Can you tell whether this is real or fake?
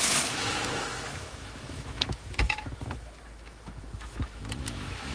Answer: fake